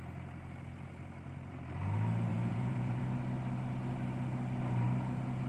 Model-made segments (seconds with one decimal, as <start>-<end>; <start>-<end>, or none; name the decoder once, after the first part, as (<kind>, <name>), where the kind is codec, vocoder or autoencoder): 2.3-3.0 (vocoder, Vocos)

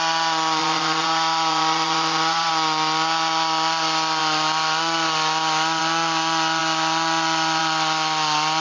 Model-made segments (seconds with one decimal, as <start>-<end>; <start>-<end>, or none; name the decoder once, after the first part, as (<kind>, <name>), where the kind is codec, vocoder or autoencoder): 0.6-2.5 (vocoder, Vocos)

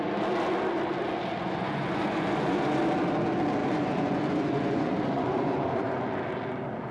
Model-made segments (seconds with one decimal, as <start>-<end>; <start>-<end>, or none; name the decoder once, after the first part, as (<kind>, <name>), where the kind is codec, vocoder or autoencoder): 1.4-2.8 (vocoder, Vocos); 3.6-6.0

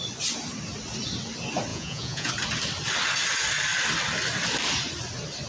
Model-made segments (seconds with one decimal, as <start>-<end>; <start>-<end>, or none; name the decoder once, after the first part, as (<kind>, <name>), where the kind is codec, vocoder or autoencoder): 1.7-2.3 (vocoder, Vocos)

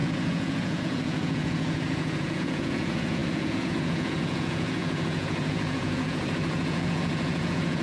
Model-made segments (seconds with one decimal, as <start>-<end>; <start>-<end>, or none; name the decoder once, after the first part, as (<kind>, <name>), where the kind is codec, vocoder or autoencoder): 0.0-7.8 (vocoder, Vocos)

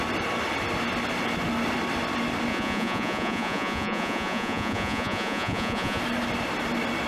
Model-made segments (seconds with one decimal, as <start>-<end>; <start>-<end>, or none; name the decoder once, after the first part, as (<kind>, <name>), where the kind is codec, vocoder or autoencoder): 2.5-6.0 (vocoder, Vocos)